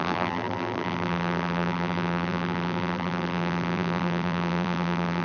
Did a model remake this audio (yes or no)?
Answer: yes